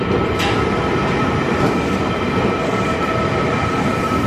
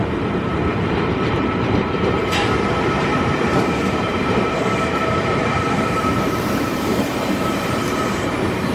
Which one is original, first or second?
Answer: first